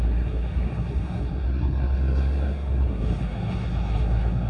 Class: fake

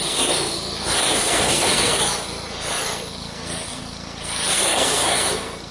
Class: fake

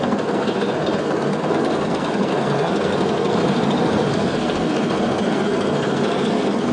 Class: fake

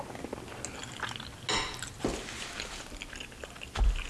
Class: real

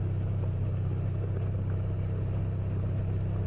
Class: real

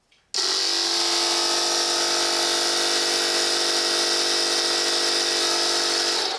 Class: real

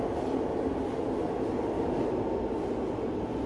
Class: real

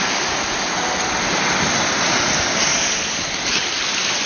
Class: real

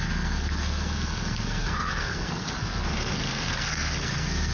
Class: fake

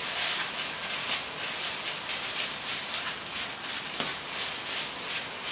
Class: real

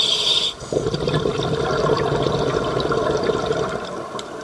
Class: real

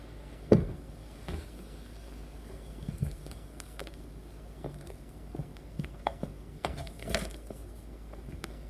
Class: fake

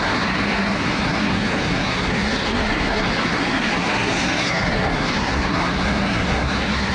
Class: fake